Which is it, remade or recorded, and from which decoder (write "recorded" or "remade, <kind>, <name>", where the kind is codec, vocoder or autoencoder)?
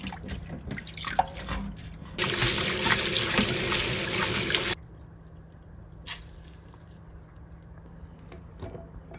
recorded